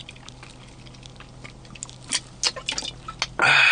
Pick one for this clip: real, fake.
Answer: real